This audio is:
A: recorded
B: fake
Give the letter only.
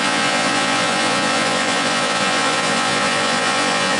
B